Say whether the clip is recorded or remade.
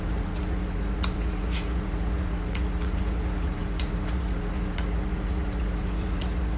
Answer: remade